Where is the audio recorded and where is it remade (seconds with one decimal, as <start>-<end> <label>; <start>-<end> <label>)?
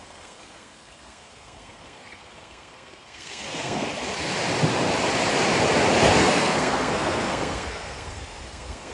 0.0-3.9 remade; 3.9-6.0 recorded; 6.0-8.9 remade